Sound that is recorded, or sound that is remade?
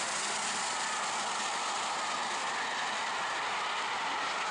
recorded